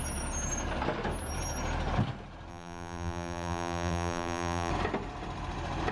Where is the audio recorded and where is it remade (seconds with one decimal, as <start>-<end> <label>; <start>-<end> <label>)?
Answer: 0.0-2.5 recorded; 2.5-4.7 remade; 4.7-5.9 recorded